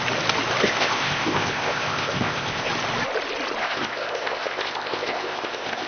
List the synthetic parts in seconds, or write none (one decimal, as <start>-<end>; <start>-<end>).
0.6-2.7; 3.6-5.9